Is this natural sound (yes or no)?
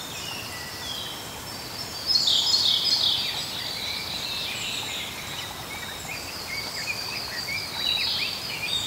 yes